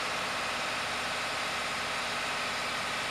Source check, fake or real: real